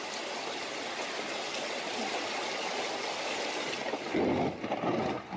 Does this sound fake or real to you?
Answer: real